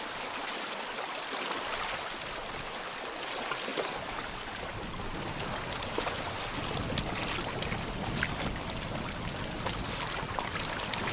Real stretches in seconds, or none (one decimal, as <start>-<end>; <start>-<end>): 0.0-11.1